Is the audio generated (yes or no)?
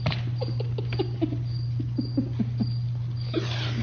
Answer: no